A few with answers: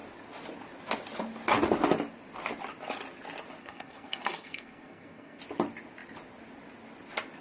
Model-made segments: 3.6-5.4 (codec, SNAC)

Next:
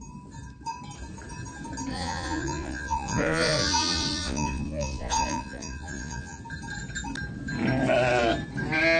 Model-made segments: 1.9-6.4 (vocoder, Vocos)

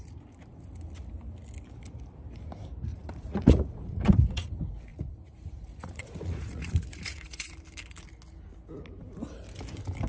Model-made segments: 2.9-4.5 (vocoder, Vocos); 4.9-7.5

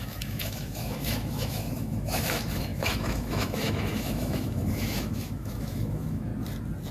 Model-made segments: 0.0-6.3 (autoencoder, DAC-VAE)

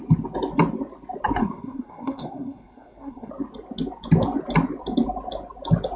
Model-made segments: 1.4-3.3 (codec, SNAC)

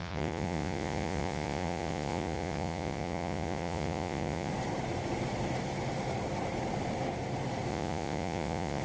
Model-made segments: 0.0-4.5 (vocoder, Vocos); 7.7-8.8